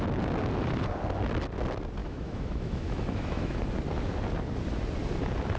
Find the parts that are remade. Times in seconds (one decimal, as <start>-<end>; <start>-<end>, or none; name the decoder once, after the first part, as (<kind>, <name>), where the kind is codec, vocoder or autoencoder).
2.0-3.6 (autoencoder, DAC-VAE)